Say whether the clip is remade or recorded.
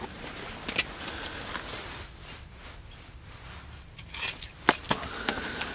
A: recorded